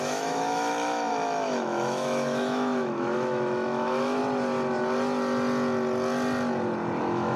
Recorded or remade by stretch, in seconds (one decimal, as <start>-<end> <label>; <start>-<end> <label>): 0.0-4.2 remade; 4.2-7.0 recorded; 7.0-7.4 remade